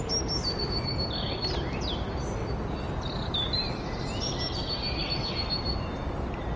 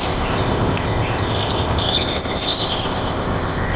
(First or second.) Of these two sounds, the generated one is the second